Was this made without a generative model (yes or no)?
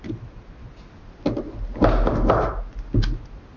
yes